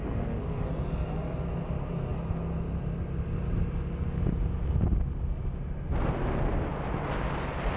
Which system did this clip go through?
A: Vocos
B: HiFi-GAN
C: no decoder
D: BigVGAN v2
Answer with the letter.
C